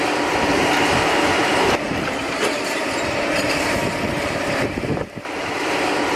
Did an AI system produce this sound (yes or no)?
yes